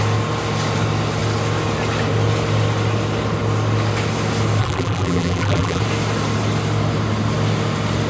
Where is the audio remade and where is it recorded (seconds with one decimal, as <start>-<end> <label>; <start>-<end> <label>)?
0.0-4.6 recorded; 4.6-5.8 remade; 5.8-8.1 recorded